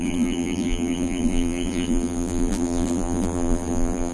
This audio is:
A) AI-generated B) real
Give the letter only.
A